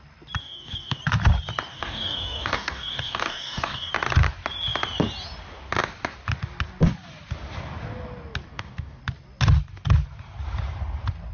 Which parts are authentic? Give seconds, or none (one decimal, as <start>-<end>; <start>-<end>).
0.0-0.4; 1.0-1.7; 3.9-8.5; 9.0-11.3